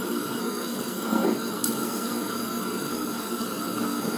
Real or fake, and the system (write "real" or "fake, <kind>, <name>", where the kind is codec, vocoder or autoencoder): fake, codec, SNAC